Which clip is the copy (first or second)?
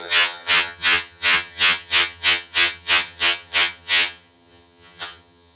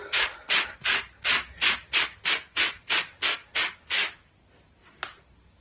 first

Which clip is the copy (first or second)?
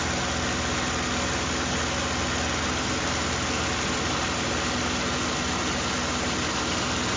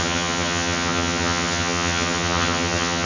second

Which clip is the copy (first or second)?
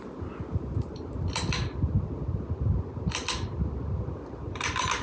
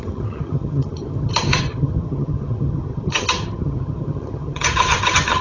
second